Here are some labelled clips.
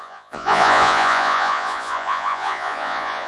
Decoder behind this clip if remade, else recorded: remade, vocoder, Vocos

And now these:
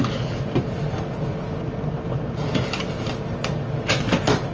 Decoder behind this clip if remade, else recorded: recorded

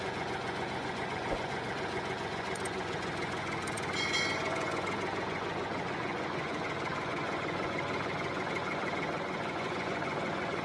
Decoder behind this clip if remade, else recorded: remade, vocoder, Vocos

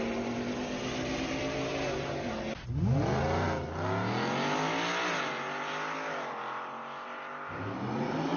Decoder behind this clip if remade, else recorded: recorded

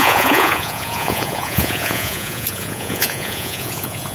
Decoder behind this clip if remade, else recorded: remade, vocoder, Vocos